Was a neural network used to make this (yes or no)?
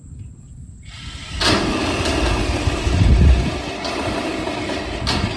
no